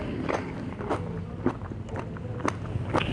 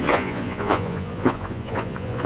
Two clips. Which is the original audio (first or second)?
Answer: first